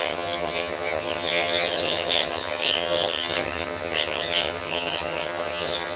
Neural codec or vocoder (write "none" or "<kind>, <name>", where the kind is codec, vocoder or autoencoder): vocoder, HiFi-GAN